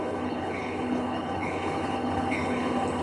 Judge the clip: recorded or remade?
remade